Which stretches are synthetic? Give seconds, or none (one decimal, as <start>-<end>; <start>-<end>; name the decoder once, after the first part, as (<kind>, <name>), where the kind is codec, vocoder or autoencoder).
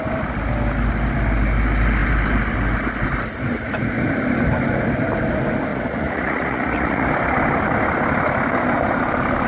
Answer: 5.7-7.1 (vocoder, Vocos)